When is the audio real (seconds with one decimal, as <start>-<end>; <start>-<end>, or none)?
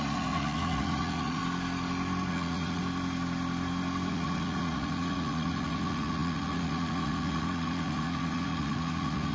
1.4-2.3; 2.8-4.1